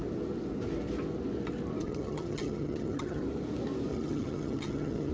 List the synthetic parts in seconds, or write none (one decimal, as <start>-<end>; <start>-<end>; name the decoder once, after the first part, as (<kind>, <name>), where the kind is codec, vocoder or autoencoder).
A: 1.8-3.2 (vocoder, HiFi-GAN); 3.9-5.1

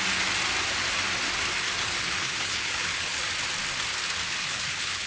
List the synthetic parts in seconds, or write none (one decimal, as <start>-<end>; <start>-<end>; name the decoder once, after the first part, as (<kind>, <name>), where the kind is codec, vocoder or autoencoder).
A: 1.8-3.2 (codec, HILCodec); 4.4-5.1

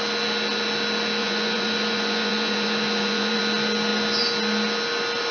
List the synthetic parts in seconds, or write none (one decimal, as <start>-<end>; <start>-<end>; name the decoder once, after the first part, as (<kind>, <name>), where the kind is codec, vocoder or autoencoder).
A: 1.2-3.4 (vocoder, Vocos)

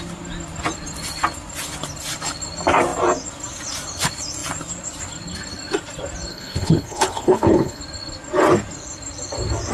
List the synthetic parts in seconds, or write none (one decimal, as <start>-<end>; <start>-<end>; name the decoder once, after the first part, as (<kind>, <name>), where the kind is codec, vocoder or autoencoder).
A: 6.3-7.8 (codec, HILCodec)

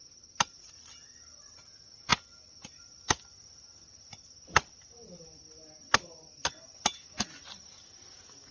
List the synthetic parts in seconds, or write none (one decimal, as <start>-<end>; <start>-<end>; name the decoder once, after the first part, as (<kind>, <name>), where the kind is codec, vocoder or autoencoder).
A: 0.0-0.7 (vocoder, BigVGAN v2)

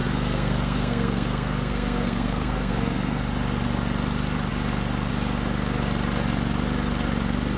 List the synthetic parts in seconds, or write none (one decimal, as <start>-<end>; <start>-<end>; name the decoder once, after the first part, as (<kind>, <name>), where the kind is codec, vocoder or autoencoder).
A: 0.0-3.2 (codec, SNAC)